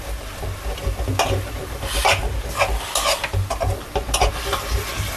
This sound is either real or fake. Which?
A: real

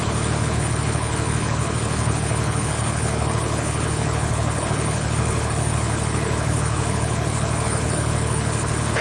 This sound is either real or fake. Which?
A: fake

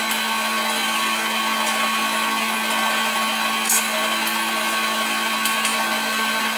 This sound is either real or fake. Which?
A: real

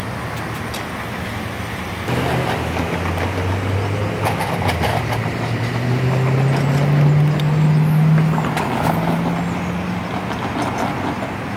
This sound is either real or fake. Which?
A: real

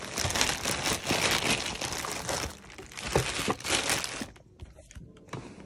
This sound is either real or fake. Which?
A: real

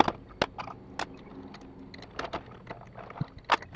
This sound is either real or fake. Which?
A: real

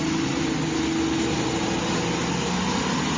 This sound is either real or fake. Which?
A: real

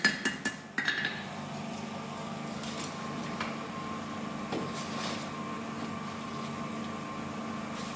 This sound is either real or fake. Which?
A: real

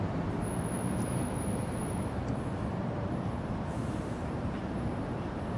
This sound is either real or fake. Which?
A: fake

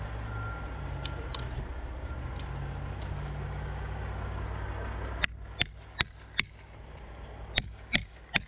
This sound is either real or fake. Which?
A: real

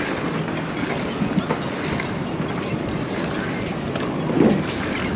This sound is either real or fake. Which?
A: real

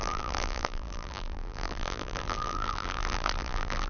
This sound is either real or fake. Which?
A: fake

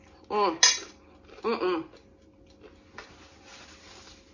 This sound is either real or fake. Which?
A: real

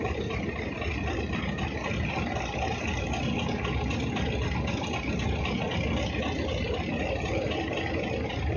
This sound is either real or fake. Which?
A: real